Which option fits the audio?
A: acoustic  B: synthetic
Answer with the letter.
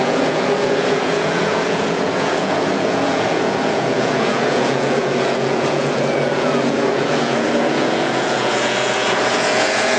B